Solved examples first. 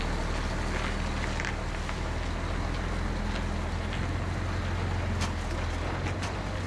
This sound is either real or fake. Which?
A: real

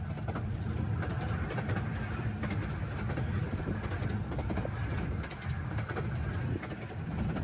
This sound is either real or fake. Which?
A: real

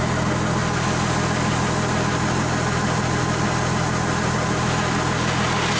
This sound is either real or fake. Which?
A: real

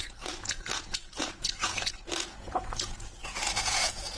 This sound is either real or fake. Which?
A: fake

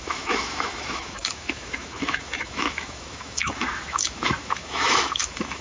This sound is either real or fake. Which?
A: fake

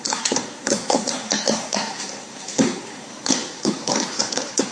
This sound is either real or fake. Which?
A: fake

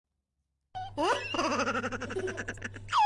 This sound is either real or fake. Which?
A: real